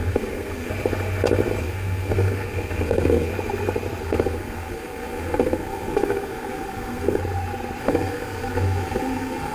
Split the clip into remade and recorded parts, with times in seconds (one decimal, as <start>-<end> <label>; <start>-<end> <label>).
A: 0.0-0.7 remade; 0.7-1.6 recorded; 1.6-3.3 remade; 3.3-4.0 recorded; 4.0-7.2 remade; 7.2-7.8 recorded; 7.8-9.5 remade